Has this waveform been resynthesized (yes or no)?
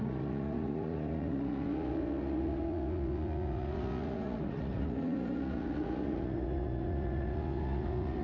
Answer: yes